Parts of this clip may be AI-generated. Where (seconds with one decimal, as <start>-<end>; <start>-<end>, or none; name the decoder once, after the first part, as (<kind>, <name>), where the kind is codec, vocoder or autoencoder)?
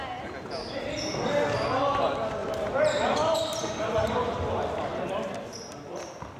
2.4-4.4 (vocoder, BigVGAN v2); 4.9-5.7